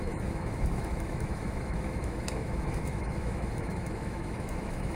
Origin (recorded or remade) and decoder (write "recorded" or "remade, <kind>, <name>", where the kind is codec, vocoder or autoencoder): remade, autoencoder, DAC-VAE